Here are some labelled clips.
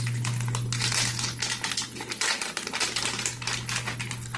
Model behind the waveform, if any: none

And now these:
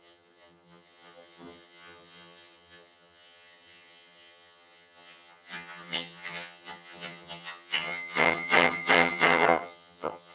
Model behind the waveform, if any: vocoder, HiFi-GAN